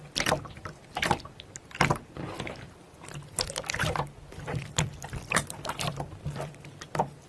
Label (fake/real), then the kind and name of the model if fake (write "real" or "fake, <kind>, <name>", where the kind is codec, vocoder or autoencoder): fake, vocoder, BigVGAN v2